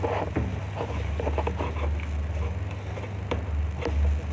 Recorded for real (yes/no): yes